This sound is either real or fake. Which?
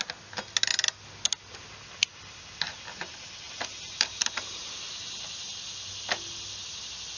real